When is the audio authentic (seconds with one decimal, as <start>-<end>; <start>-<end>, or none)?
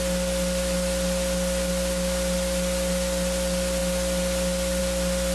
0.0-5.3